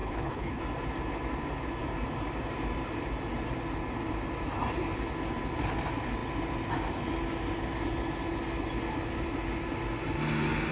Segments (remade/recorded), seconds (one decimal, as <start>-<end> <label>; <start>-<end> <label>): 0.0-0.6 remade; 0.6-10.7 recorded